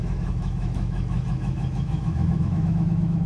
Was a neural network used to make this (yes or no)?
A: yes